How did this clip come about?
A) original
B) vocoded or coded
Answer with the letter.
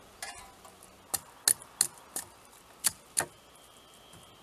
A